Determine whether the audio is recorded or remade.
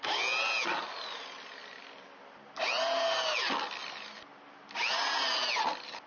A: recorded